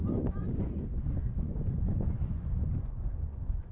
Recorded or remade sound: remade